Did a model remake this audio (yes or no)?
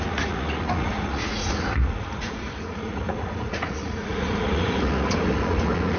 yes